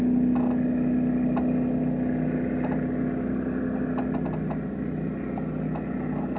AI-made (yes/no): no